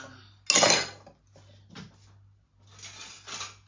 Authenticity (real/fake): real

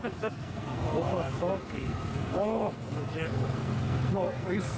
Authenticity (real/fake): fake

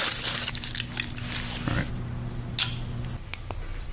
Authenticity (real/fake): real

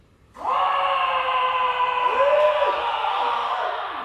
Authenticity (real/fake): real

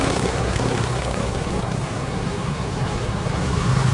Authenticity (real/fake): fake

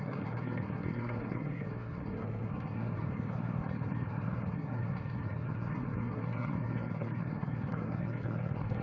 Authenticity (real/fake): fake